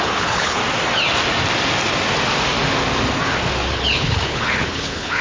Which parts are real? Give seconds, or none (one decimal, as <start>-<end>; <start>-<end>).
0.6-3.7